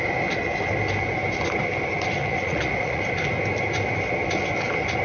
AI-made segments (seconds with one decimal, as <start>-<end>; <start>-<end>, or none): 2.2-3.0